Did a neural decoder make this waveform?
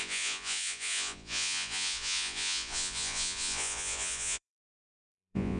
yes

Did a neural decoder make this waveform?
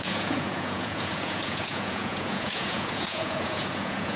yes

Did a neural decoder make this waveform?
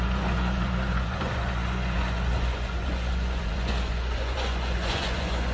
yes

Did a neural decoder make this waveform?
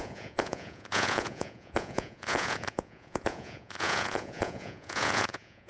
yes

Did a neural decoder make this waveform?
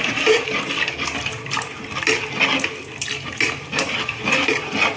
no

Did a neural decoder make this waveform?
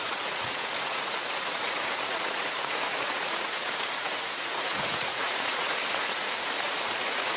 yes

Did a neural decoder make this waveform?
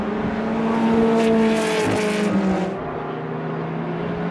no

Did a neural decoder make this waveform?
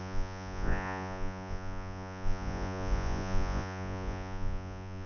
yes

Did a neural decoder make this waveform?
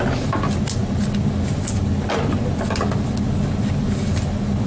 no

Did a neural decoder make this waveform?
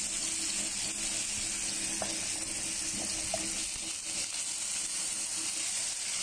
no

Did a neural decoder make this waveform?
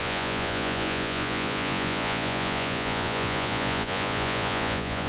yes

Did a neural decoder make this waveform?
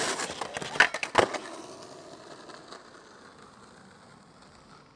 no